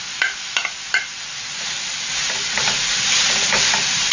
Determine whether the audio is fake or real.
real